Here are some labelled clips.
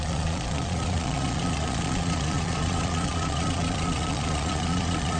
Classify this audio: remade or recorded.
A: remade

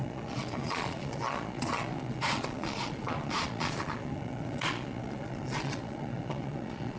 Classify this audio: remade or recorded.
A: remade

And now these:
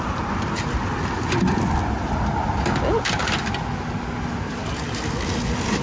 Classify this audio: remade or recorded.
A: recorded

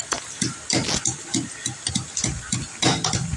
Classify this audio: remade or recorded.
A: recorded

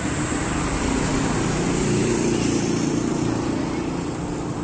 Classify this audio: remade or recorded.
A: recorded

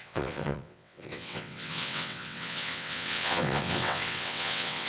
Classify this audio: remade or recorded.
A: remade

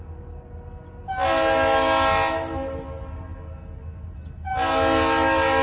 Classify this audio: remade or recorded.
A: recorded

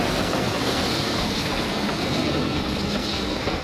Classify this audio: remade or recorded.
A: remade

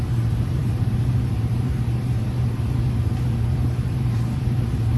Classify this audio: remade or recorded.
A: remade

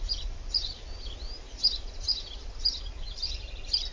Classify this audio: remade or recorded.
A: recorded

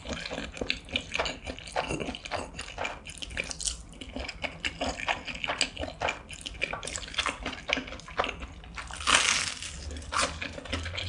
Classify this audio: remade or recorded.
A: recorded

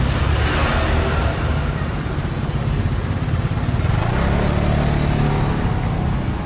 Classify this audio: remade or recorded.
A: recorded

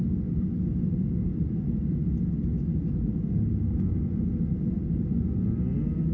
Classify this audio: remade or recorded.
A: recorded